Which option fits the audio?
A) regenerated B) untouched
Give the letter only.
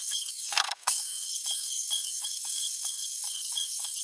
A